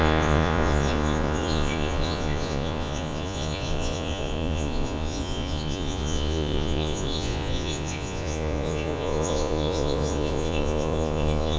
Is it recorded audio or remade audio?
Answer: remade